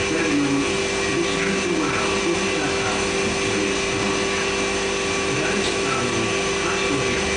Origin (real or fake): real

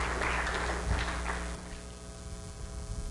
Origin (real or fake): real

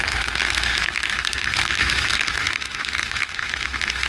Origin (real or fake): fake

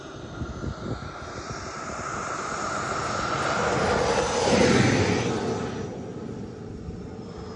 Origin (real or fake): real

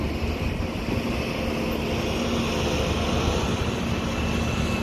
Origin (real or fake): real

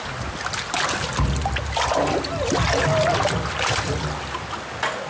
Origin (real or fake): real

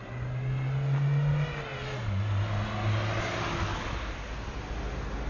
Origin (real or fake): real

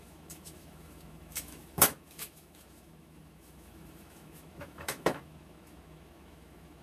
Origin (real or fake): fake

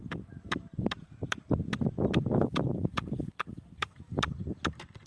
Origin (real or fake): fake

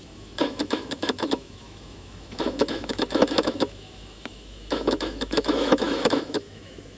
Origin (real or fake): fake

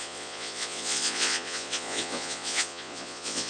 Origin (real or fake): fake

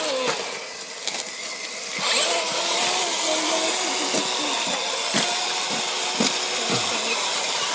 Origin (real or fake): real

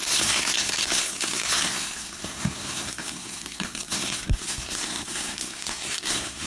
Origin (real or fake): fake